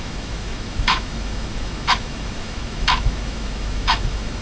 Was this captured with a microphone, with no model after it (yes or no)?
no